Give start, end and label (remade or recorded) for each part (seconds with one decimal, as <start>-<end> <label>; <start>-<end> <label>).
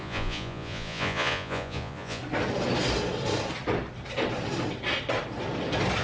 0.0-2.2 remade; 2.2-6.0 recorded